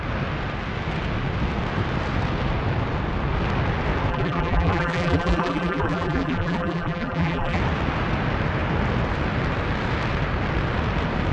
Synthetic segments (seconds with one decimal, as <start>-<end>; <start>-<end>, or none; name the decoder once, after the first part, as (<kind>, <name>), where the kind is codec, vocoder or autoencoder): 4.1-7.6 (vocoder, BigVGAN v2)